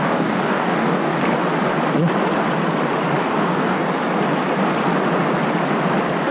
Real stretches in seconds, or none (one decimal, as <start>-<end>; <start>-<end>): 1.1-3.2; 3.8-6.3